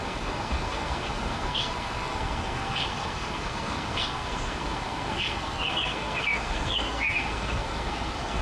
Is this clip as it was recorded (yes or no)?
no